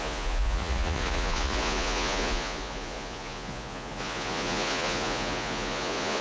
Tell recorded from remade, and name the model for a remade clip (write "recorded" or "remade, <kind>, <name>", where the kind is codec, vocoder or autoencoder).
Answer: remade, vocoder, Vocos